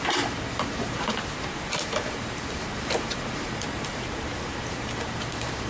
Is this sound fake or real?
fake